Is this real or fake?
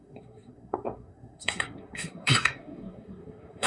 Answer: fake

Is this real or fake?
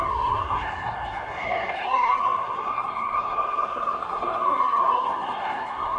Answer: fake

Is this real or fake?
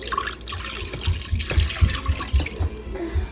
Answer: real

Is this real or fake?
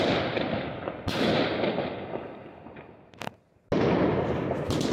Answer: real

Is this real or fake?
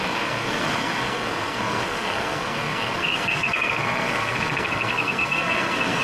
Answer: fake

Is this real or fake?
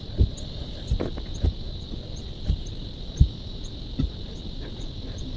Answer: real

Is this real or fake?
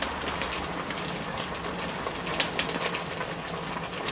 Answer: real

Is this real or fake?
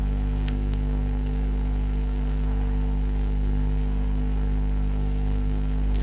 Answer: fake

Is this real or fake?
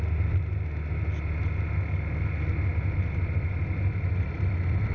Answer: real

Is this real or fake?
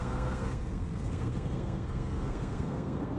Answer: fake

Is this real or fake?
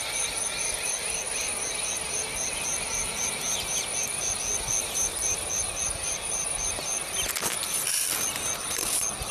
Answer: real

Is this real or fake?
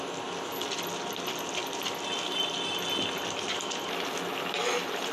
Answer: real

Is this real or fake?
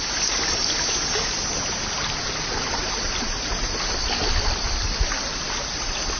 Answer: real